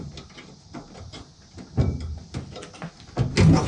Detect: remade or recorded recorded